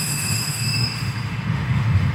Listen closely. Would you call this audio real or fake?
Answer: fake